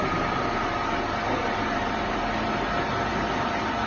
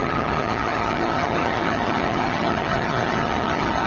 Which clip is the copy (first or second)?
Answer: second